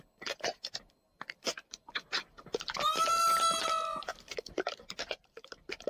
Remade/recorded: recorded